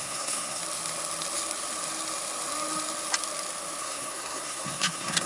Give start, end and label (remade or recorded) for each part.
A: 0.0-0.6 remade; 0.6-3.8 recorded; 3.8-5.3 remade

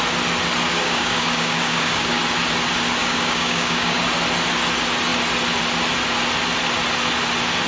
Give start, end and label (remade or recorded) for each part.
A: 0.0-0.7 recorded; 0.7-2.2 remade; 2.2-3.0 recorded; 3.0-4.0 remade; 4.0-7.7 recorded

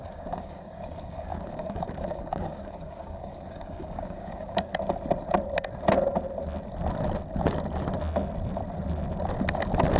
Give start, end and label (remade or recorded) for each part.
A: 0.0-4.7 remade; 4.7-10.0 recorded

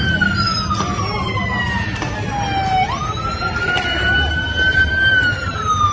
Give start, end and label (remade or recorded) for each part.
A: 0.0-5.9 recorded